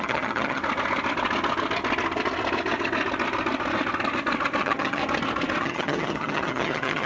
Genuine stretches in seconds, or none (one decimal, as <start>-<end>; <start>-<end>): 0.6-4.6; 5.0-5.6